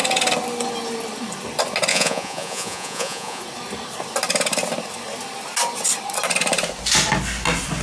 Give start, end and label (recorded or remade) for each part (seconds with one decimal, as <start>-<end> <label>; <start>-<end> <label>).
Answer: 0.0-1.9 recorded; 1.9-3.4 remade; 3.4-7.8 recorded

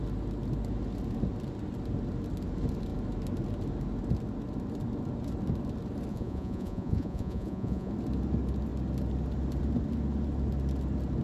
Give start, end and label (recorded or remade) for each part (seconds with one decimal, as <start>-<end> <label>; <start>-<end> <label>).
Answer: 0.0-6.1 recorded; 6.1-7.9 remade; 7.9-11.2 recorded

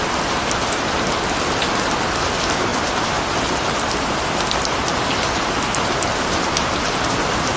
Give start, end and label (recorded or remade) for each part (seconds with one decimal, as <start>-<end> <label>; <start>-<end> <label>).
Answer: 0.0-7.6 recorded

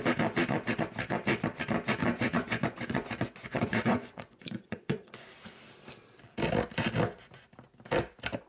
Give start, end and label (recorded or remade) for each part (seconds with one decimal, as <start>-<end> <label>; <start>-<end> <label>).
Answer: 0.0-2.0 recorded; 2.0-5.3 remade; 5.3-8.5 recorded

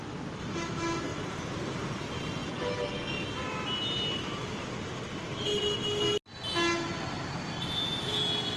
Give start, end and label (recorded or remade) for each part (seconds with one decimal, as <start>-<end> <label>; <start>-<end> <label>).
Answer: 0.0-8.6 recorded

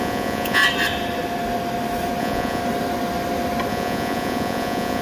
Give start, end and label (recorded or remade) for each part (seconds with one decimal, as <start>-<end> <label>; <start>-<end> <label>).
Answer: 0.0-0.6 remade; 0.6-2.2 recorded; 2.2-2.6 remade; 2.6-3.7 recorded; 3.7-5.0 remade

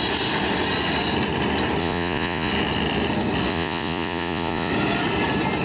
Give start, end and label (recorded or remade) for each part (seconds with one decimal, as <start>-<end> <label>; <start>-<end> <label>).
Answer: 0.0-1.8 recorded; 1.8-2.5 remade; 2.5-3.5 recorded; 3.5-4.7 remade; 4.7-5.6 recorded